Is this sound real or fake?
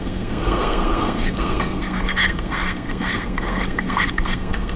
fake